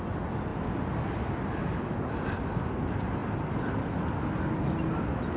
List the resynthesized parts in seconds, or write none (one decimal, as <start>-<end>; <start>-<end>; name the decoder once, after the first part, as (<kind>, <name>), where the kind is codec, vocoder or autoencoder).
none